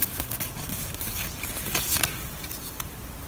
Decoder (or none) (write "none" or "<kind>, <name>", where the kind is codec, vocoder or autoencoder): none